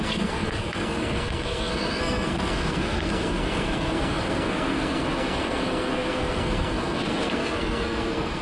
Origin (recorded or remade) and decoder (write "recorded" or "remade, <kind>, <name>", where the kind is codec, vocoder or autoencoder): remade, codec, SNAC